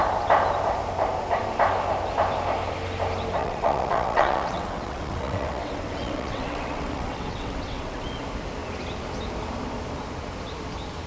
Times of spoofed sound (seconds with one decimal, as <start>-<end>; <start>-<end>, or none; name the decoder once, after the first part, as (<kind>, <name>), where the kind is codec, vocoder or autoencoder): 3.4-8.2 (vocoder, WaveNeXt)